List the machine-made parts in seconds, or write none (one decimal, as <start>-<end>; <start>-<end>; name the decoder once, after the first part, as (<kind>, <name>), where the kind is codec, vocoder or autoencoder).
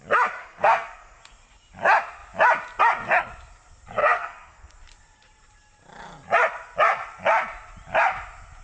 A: 0.4-1.2 (codec, SNAC); 4.0-4.7